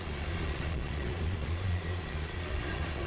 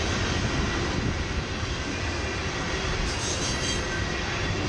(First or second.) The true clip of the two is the second